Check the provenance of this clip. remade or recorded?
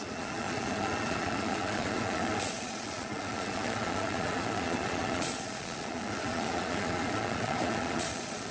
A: remade